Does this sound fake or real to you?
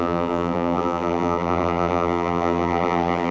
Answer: fake